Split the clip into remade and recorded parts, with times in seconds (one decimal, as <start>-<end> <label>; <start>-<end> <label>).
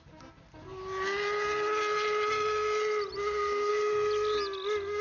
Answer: 0.0-5.0 recorded